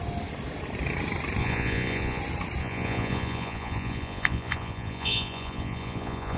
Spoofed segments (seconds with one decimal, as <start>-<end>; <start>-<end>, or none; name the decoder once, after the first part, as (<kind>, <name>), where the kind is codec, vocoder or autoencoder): 1.4-2.2 (vocoder, Vocos); 2.6-6.4